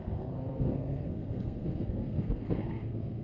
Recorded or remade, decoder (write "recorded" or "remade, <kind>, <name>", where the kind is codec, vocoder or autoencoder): remade, codec, SNAC